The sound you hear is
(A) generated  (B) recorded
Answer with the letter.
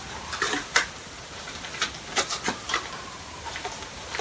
B